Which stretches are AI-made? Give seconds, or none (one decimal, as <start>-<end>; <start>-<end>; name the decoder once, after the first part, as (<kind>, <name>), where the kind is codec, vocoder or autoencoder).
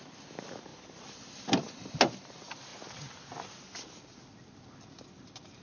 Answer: none